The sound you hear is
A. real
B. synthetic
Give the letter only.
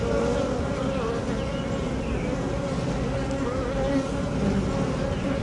A